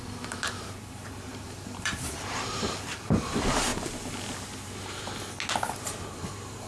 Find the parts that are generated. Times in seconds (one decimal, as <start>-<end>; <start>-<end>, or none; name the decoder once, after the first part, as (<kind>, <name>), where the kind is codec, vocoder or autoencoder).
0.0-3.7 (vocoder, BigVGAN v2); 6.2-6.7